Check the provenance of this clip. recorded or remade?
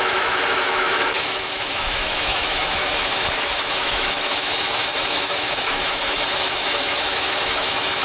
remade